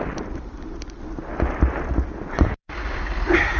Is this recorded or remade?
remade